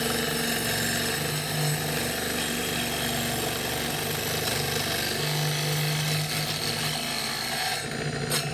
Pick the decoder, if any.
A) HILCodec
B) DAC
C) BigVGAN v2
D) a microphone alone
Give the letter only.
D